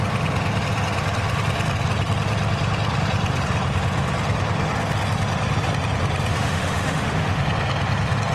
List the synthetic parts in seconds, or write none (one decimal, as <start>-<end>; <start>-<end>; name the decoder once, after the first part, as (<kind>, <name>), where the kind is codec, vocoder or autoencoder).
6.3-7.4 (autoencoder, DAC-VAE)

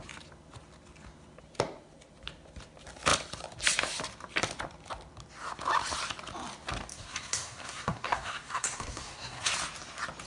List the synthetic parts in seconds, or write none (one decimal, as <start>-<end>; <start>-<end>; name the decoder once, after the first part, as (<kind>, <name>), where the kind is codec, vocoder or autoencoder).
6.9-9.5 (codec, SNAC)

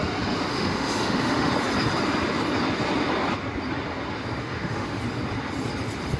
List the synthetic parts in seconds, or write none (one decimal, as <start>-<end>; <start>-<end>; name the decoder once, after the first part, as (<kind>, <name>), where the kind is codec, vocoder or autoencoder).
0.5-1.5 (autoencoder, DAC-VAE); 4.4-5.0

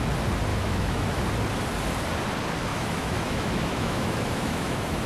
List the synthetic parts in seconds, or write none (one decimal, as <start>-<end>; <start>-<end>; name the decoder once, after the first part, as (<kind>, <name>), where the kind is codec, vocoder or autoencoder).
0.5-1.2 (autoencoder, DAC-VAE); 2.7-5.1

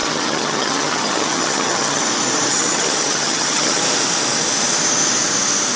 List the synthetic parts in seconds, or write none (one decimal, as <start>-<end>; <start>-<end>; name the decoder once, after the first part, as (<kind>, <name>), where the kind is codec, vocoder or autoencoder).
0.0-2.0 (vocoder, HiFi-GAN); 2.5-3.8

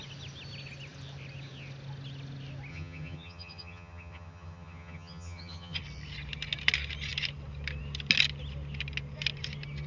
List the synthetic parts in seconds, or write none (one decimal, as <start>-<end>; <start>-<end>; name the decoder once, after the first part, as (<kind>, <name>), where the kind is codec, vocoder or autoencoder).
2.7-5.8 (vocoder, HiFi-GAN)